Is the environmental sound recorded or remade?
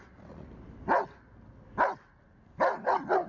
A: recorded